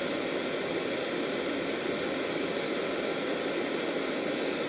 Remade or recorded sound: recorded